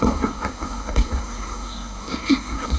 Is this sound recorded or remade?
remade